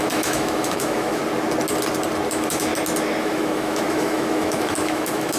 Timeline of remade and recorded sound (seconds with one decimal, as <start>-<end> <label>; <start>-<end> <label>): 0.0-1.2 remade; 1.2-2.3 recorded; 2.3-2.7 remade; 2.7-3.2 recorded; 3.2-5.4 remade